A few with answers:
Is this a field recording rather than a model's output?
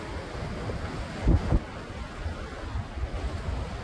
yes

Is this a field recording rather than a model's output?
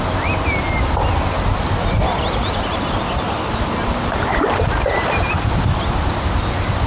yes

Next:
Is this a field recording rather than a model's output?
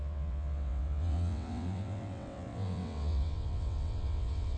no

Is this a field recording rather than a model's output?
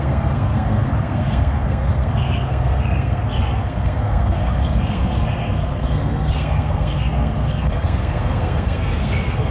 no